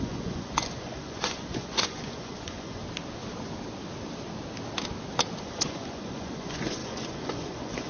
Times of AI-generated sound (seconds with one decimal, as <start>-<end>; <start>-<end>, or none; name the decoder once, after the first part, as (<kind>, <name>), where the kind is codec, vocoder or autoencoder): 0.0-2.8 (vocoder, Vocos); 5.4-7.9